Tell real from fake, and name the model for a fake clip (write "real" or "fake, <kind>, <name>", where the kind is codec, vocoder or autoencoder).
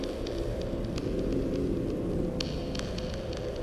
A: real